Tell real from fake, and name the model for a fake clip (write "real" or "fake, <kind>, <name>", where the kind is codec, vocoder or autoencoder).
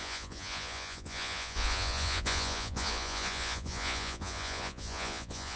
fake, vocoder, Vocos